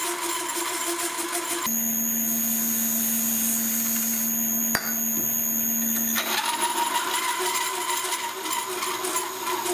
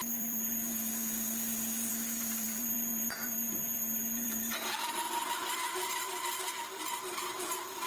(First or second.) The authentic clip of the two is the first